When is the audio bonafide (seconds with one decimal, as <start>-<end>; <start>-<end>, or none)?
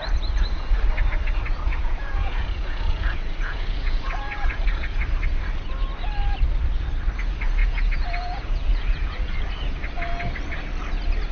0.0-1.7; 5.0-7.6; 9.4-11.3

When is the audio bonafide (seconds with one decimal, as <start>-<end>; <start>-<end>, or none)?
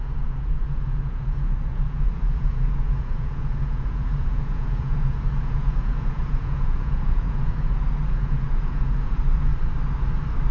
9.5-10.5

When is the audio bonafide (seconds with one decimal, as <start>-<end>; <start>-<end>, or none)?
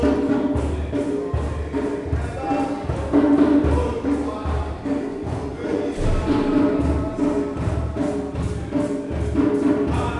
0.0-5.1; 5.8-10.2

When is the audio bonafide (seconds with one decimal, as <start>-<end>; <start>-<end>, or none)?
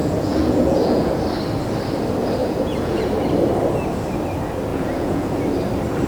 1.1-2.4; 3.0-4.7; 5.4-6.1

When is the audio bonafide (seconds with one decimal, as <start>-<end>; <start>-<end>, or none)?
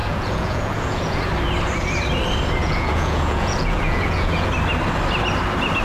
1.2-2.6; 4.5-5.8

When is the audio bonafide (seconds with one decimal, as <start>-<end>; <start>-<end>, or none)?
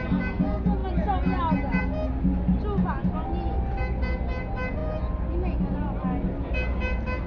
0.0-7.3